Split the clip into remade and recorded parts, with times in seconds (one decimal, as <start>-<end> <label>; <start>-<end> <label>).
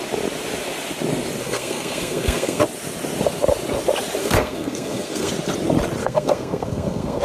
0.0-1.4 recorded; 1.4-2.6 remade; 2.6-4.2 recorded; 4.2-5.3 remade; 5.3-6.0 recorded; 6.0-7.2 remade